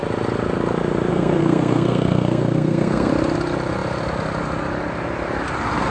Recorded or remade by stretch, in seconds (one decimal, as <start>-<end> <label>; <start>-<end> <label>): 0.0-1.1 recorded; 1.1-3.1 remade; 3.1-5.9 recorded